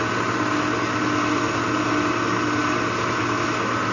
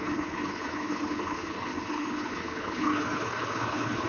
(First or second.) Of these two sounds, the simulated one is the second